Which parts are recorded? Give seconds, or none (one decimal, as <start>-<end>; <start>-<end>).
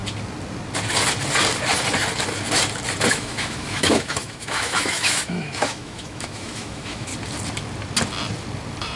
0.0-3.1; 7.1-9.0